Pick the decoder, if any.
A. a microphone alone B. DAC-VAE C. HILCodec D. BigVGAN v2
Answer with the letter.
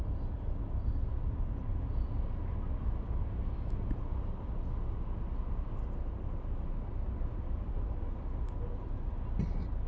A